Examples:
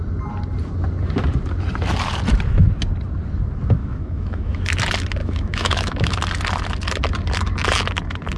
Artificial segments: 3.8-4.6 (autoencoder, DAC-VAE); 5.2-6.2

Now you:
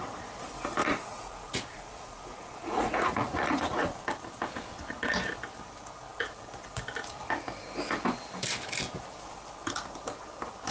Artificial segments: 0.8-4.0 (vocoder, Vocos)

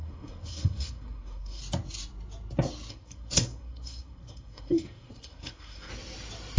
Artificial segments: 0.0-1.6 (codec, SNAC); 2.9-5.9